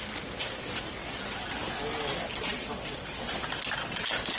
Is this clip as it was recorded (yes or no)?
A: yes